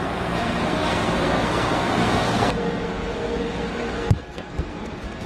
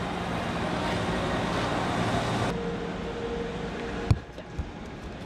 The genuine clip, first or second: second